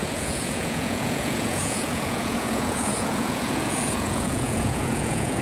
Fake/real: fake